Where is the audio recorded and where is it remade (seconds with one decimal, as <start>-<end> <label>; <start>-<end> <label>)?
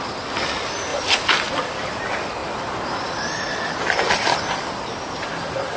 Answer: 0.0-0.9 recorded; 0.9-2.0 remade; 2.0-2.4 recorded; 2.4-5.8 remade